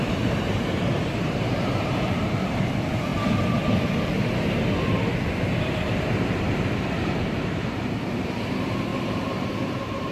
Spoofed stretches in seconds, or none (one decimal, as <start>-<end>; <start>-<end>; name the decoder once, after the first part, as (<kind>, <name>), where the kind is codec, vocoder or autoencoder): 0.0-3.1 (vocoder, BigVGAN v2); 5.6-10.1